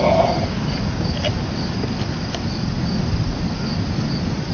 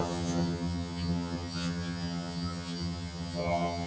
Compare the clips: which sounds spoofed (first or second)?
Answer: second